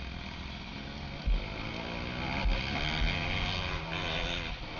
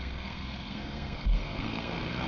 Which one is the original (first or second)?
first